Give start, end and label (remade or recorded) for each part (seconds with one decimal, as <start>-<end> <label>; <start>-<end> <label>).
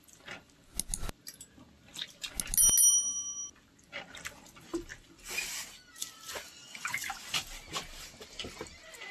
0.0-9.1 recorded